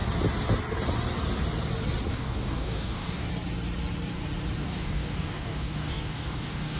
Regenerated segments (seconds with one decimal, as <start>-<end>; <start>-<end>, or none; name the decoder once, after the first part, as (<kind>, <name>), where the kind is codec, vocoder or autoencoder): 2.1-3.3 (codec, DAC); 4.6-6.8